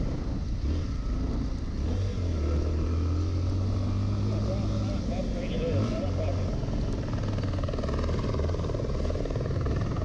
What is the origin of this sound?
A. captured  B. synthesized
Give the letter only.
A